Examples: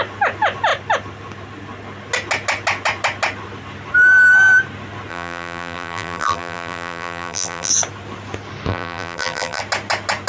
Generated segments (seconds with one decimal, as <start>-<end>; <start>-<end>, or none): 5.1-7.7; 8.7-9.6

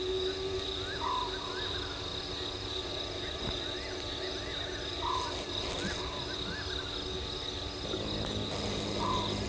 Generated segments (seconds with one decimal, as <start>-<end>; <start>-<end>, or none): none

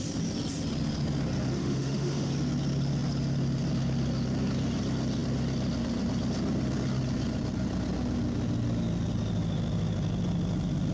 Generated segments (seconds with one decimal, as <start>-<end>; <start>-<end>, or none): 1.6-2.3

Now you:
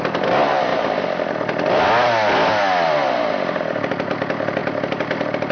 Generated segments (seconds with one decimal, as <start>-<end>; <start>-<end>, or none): 0.7-1.3; 2.5-3.9; 4.6-5.5